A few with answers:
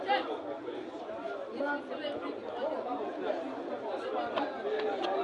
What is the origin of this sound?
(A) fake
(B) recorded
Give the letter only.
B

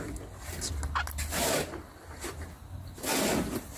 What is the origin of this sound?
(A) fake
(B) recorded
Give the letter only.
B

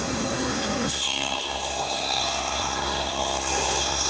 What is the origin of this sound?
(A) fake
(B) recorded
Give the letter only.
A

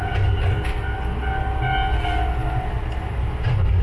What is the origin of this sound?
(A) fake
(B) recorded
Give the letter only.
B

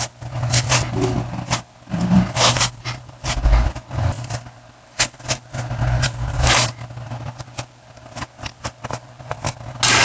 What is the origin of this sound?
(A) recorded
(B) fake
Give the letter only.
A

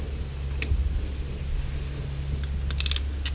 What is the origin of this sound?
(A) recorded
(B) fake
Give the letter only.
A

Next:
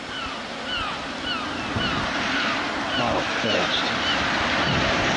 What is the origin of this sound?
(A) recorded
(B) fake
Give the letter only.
A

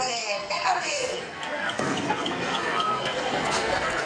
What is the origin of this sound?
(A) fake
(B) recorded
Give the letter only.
A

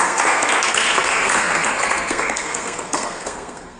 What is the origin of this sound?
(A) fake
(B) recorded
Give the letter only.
A